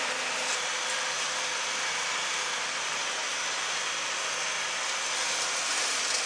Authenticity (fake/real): fake